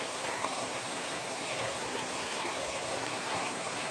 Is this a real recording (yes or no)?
no